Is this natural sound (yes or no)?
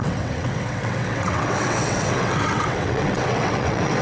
no